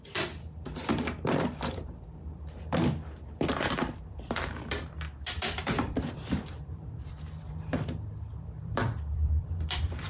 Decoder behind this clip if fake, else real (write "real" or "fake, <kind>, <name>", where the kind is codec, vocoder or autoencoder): fake, vocoder, BigVGAN v2